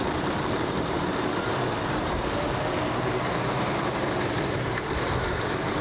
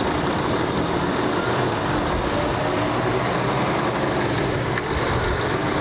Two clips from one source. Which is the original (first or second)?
second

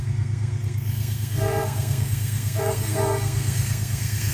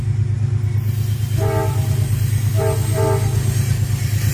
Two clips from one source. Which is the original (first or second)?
second